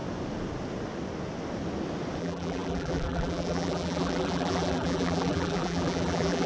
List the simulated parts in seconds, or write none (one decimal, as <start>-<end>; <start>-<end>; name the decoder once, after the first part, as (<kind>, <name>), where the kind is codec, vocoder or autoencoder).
2.2-6.5 (vocoder, BigVGAN v2)